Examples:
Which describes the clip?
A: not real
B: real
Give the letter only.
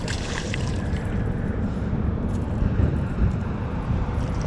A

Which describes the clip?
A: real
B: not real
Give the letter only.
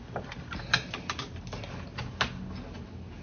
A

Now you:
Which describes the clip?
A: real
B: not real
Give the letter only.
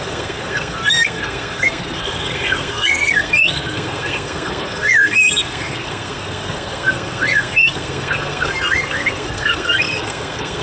B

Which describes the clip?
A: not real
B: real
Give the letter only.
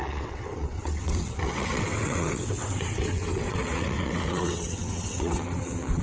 A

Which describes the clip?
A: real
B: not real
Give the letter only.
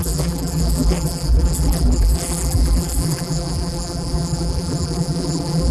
B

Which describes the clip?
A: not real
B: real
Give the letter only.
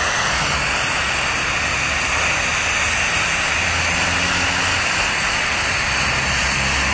B